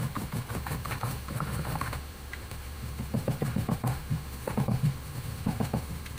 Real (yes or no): no